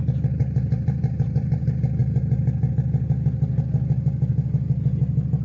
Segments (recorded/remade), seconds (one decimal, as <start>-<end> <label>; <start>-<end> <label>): 0.0-0.4 recorded; 0.4-1.6 remade; 1.6-5.4 recorded